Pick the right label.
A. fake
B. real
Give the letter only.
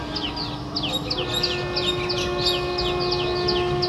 B